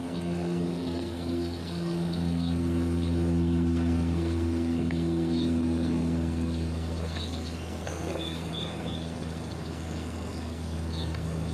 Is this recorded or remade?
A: remade